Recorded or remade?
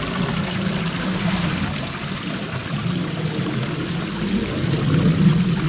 recorded